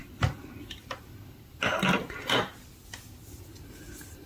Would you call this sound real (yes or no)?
yes